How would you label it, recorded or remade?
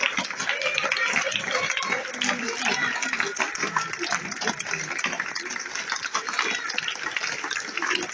recorded